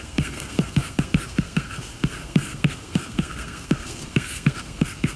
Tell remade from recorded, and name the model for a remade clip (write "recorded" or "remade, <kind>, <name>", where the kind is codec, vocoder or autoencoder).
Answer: remade, codec, SNAC